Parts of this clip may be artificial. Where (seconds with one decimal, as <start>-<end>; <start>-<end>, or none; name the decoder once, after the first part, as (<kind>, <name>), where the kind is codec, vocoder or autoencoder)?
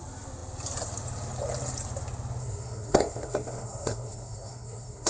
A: 2.4-5.1 (codec, SNAC)